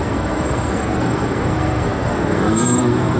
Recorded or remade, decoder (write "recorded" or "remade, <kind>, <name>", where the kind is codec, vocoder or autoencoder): remade, codec, SNAC